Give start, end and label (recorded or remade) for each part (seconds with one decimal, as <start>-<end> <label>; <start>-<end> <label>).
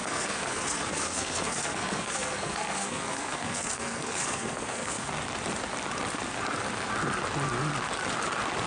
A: 0.0-5.1 remade; 5.1-8.7 recorded